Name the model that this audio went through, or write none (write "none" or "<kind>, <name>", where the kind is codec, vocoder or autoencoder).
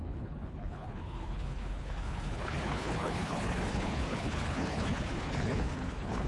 codec, HILCodec